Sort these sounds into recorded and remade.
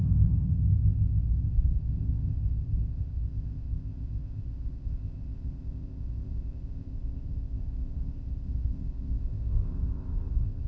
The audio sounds remade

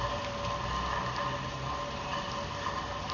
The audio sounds recorded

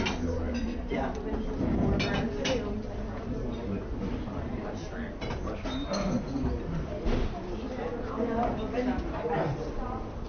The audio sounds recorded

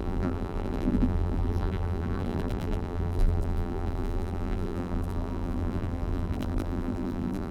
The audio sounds remade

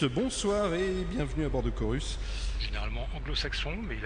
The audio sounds recorded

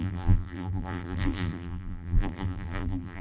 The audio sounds remade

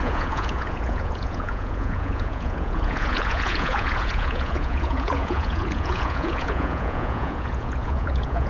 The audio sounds remade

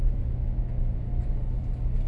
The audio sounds recorded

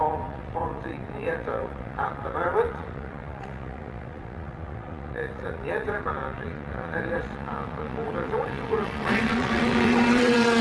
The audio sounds remade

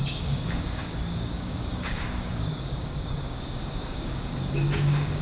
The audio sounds remade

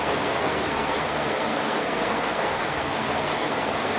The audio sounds remade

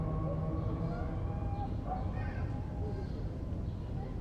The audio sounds recorded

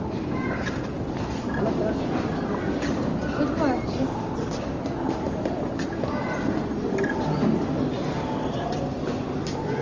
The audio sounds recorded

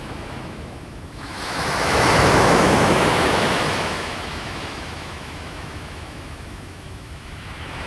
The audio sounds remade